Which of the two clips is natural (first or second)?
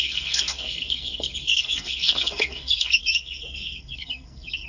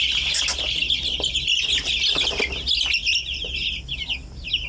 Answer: second